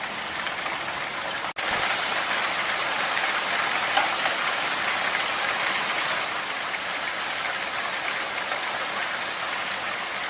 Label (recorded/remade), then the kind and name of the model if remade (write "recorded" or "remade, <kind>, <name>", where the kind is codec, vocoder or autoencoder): recorded